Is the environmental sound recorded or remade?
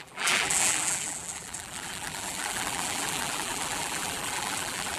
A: remade